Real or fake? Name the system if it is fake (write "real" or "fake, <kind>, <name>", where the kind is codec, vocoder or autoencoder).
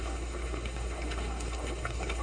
fake, codec, SNAC